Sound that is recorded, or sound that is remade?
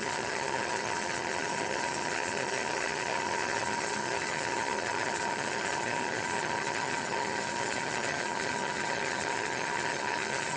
remade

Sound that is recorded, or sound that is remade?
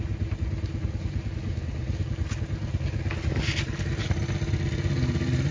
recorded